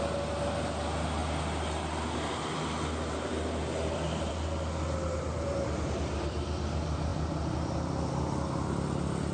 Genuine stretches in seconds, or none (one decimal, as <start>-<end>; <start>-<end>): 0.0-9.3